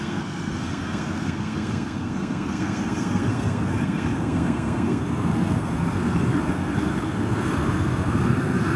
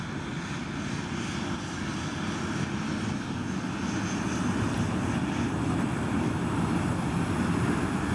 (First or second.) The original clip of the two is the second